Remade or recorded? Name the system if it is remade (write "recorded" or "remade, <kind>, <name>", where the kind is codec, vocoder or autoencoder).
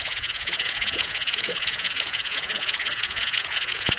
remade, vocoder, Vocos